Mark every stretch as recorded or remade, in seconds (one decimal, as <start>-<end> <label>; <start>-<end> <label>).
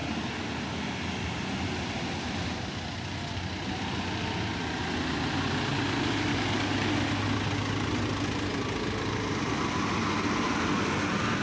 0.0-6.3 recorded; 6.3-6.9 remade; 6.9-11.4 recorded